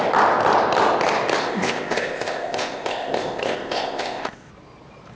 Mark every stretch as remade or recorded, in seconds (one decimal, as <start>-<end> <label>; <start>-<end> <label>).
0.0-1.4 recorded; 1.4-4.5 remade; 4.5-5.2 recorded